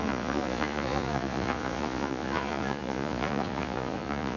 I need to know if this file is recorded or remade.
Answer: remade